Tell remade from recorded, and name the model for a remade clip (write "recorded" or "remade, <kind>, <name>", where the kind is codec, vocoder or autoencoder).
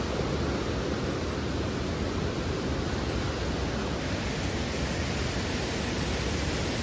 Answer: recorded